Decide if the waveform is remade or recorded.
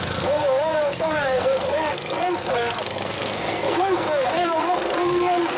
remade